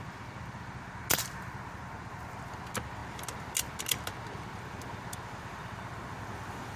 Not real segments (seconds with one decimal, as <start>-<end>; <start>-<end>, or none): none